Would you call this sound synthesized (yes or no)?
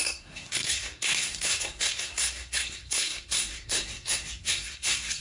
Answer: yes